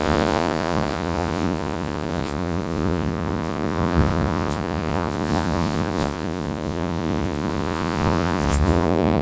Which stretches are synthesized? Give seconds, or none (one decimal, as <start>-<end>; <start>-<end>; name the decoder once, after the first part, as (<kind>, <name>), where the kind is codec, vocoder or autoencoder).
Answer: 0.0-9.2 (vocoder, Vocos)